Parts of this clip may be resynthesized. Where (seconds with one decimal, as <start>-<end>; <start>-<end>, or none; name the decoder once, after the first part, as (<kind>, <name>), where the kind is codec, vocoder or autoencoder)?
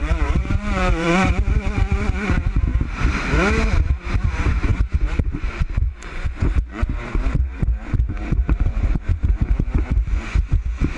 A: 0.0-2.7 (vocoder, Vocos); 4.3-6.8; 8.4-11.0